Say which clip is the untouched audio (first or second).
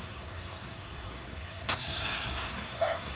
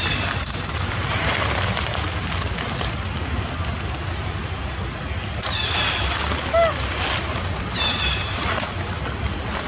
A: second